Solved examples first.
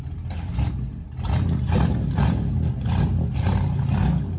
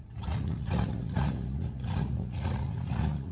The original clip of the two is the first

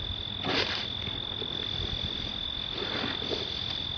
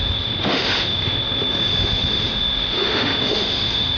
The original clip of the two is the first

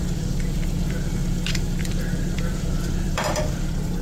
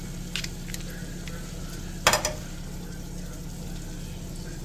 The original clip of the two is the second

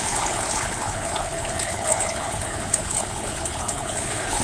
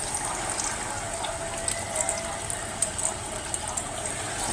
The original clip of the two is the second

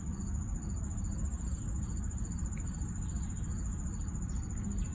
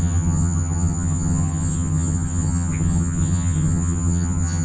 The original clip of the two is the first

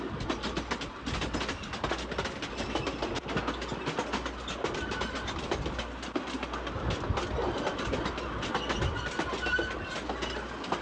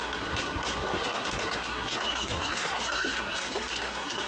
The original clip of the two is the first